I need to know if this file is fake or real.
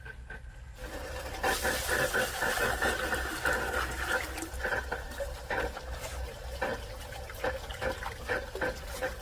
real